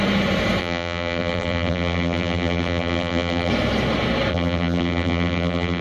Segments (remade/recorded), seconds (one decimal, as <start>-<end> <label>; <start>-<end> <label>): 0.0-0.6 recorded; 0.6-3.5 remade; 3.5-4.3 recorded; 4.3-5.8 remade